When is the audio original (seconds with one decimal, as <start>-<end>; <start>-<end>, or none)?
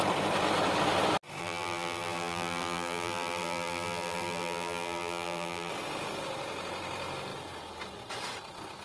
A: 0.0-1.4; 5.7-8.8